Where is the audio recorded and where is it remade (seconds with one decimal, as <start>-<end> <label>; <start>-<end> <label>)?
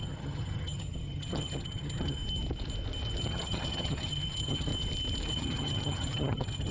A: 0.0-2.2 remade; 2.2-3.2 recorded; 3.2-4.7 remade; 4.7-5.3 recorded; 5.3-6.7 remade